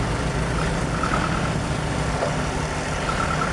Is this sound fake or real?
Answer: real